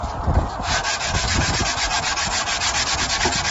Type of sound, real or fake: real